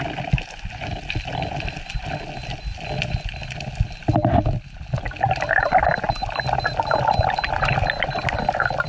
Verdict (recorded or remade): recorded